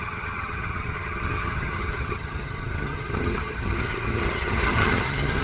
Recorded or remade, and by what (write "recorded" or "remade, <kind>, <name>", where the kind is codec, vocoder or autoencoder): remade, vocoder, HiFi-GAN